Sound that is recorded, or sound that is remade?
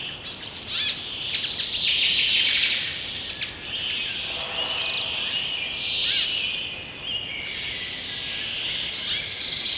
recorded